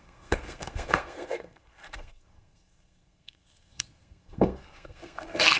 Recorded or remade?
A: remade